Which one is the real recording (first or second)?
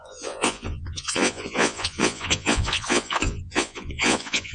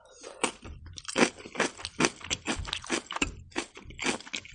second